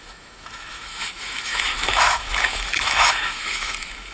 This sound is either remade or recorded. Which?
remade